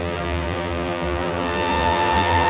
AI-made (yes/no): yes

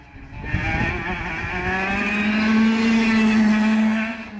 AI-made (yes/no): no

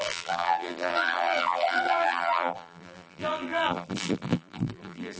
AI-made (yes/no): yes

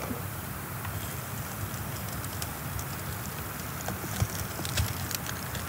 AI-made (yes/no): no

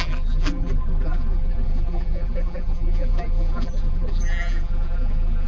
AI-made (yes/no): yes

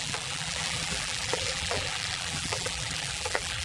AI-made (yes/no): yes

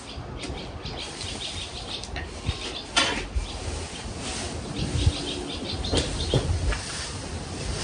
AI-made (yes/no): no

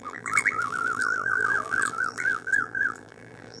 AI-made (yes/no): yes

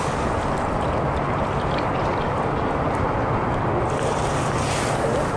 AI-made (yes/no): no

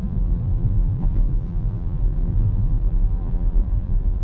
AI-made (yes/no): yes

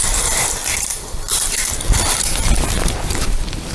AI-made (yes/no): yes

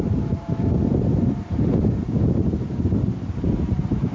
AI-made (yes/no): yes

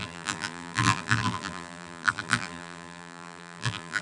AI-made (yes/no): yes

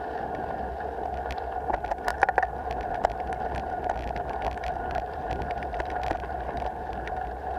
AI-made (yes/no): no